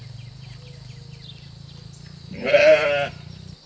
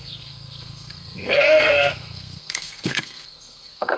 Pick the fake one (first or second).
second